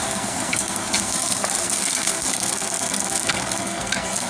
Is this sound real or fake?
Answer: fake